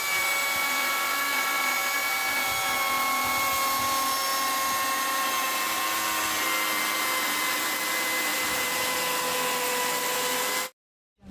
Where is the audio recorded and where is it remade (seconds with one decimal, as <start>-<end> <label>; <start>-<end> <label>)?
0.0-8.3 recorded; 8.3-8.9 remade; 8.9-11.3 recorded